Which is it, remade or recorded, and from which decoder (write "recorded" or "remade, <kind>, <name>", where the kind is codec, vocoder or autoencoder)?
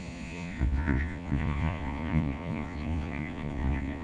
remade, vocoder, Vocos